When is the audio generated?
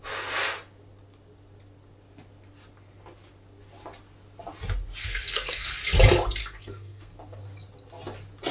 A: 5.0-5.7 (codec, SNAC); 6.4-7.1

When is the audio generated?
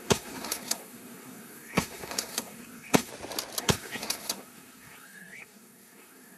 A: 0.0-3.1 (codec, SNAC); 3.6-6.4